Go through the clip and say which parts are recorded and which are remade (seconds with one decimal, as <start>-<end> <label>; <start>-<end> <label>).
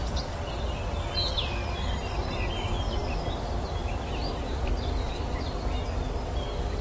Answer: 0.0-3.0 recorded; 3.0-5.1 remade; 5.1-6.8 recorded